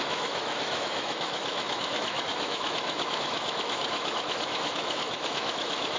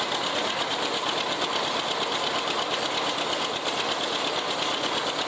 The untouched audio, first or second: second